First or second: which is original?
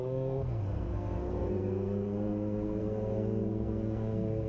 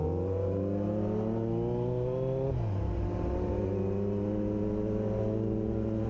second